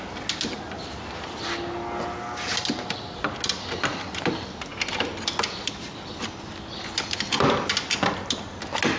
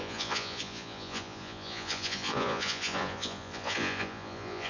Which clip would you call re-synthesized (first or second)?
second